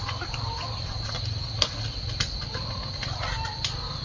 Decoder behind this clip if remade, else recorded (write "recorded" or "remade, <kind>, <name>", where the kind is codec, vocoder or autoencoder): recorded